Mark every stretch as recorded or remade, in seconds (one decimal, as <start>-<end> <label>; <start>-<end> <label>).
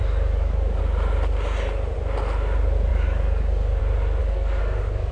0.0-0.8 remade; 0.8-2.9 recorded; 2.9-3.8 remade; 3.8-4.2 recorded; 4.2-5.1 remade